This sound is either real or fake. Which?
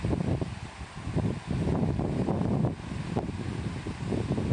real